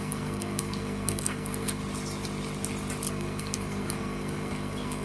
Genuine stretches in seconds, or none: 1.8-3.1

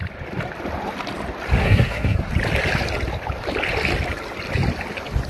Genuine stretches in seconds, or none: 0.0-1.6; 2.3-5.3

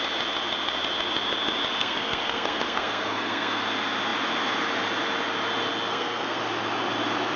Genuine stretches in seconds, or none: 0.0-1.8; 3.6-5.9; 6.4-7.4

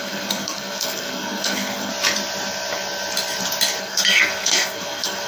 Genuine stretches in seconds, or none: 1.9-3.8